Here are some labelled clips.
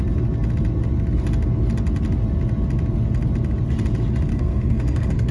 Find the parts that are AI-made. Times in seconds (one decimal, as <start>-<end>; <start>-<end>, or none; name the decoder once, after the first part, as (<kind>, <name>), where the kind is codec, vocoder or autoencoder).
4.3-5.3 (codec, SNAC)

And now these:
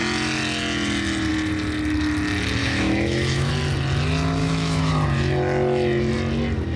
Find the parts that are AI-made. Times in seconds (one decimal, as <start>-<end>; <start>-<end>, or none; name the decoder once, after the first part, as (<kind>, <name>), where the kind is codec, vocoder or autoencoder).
2.6-3.5 (autoencoder, DAC-VAE); 4.4-4.9

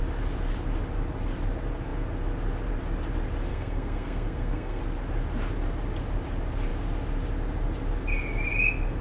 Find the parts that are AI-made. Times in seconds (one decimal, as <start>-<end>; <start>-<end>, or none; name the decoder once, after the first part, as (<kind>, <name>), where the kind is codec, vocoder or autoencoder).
3.5-4.8 (codec, SNAC)